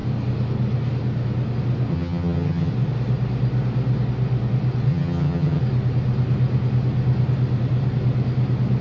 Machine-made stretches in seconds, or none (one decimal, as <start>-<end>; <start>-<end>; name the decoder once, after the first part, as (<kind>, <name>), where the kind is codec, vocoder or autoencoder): 1.9-2.7 (vocoder, HiFi-GAN); 4.9-5.6